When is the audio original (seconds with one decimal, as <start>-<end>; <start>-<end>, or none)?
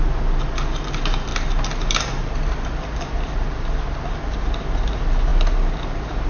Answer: 0.0-6.3